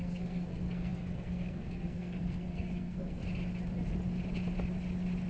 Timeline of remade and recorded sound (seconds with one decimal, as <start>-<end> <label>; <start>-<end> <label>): 0.0-3.2 remade; 3.2-5.3 recorded